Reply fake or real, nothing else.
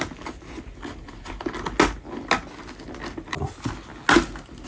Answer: real